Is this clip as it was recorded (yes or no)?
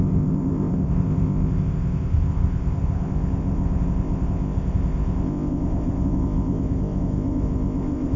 no